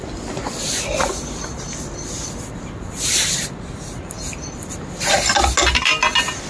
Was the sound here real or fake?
real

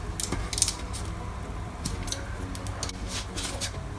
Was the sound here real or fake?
real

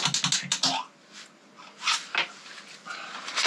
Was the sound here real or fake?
real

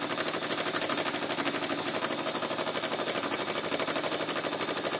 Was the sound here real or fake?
real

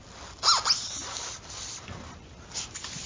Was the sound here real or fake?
real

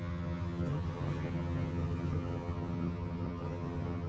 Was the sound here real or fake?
fake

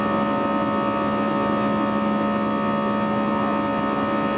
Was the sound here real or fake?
real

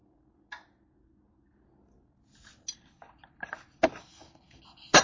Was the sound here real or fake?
real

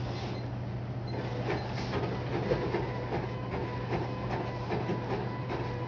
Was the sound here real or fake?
real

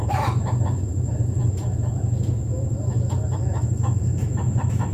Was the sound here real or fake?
fake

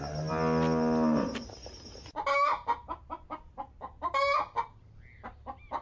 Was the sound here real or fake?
real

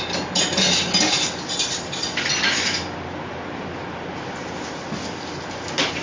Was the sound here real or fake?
real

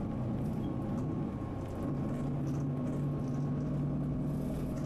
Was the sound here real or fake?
real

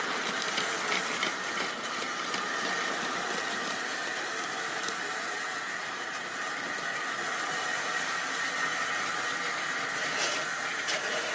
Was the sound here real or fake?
real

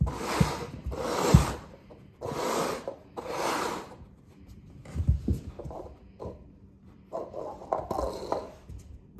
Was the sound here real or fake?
real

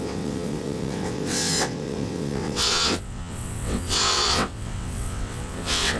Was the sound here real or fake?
fake